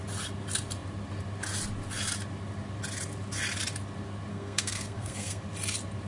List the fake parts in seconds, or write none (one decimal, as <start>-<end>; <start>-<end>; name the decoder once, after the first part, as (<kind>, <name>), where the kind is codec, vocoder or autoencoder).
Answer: 4.3-5.4 (codec, SNAC)